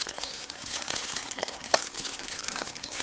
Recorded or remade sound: remade